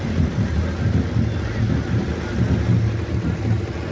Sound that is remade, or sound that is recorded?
recorded